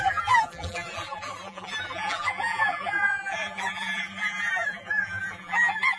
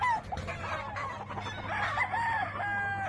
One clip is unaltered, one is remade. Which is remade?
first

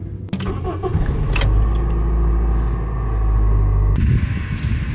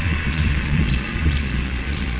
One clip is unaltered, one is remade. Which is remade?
second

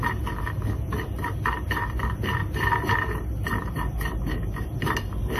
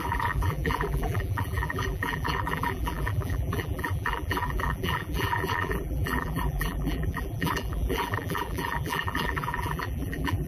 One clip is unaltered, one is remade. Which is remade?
second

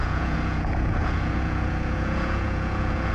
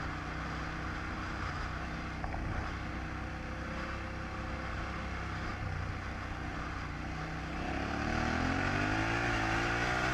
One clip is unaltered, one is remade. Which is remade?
first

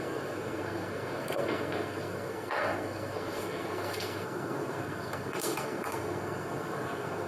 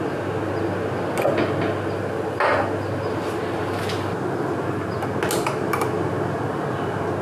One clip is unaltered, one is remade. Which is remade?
first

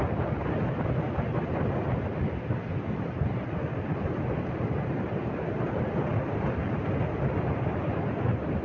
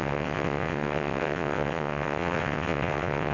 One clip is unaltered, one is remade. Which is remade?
second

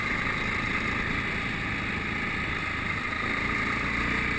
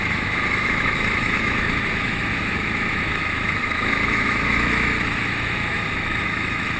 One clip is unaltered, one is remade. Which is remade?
second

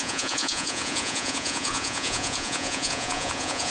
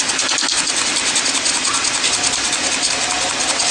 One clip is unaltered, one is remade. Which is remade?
first